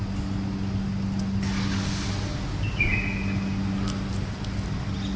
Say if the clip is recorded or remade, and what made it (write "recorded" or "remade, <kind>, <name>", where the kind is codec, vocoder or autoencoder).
recorded